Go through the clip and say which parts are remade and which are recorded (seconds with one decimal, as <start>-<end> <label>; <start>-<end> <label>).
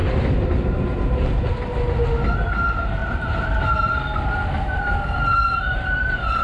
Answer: 0.0-1.5 remade; 1.5-3.0 recorded; 3.0-4.0 remade; 4.0-6.4 recorded